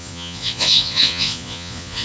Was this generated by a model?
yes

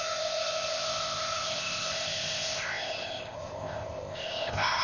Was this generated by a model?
yes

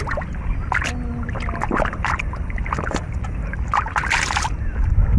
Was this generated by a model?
no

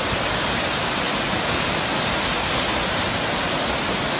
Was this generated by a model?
no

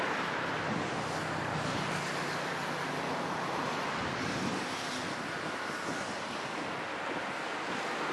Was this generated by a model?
no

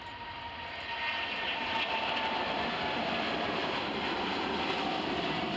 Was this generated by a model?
no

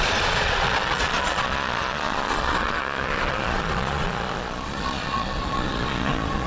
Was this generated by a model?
yes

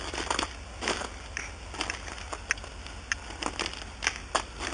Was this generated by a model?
no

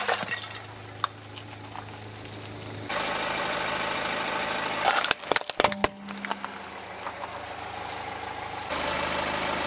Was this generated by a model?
no